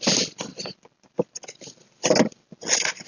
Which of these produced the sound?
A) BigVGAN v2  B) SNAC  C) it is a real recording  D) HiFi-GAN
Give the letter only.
C